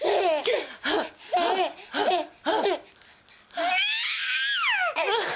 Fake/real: real